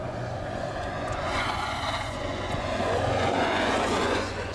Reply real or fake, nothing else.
fake